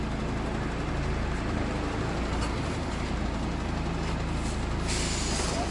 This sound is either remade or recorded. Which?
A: recorded